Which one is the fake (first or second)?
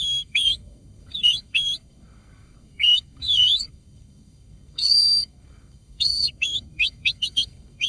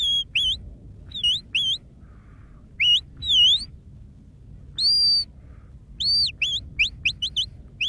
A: first